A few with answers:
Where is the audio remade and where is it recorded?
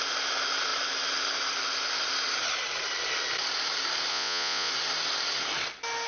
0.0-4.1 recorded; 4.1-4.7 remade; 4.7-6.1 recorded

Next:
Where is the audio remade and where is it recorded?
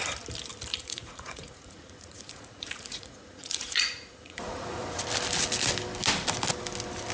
0.0-0.7 recorded; 0.7-5.0 remade; 5.0-7.1 recorded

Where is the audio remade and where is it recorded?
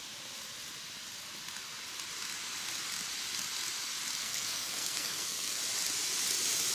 0.0-4.2 recorded; 4.2-5.6 remade; 5.6-6.7 recorded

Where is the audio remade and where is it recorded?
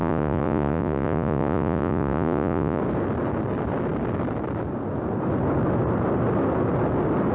0.0-2.8 remade; 2.8-7.3 recorded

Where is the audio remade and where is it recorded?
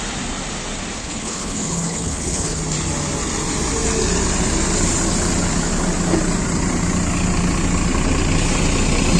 0.0-1.0 recorded; 1.0-2.6 remade; 2.6-9.2 recorded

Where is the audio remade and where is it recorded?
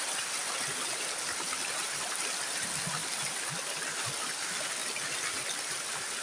0.0-6.2 recorded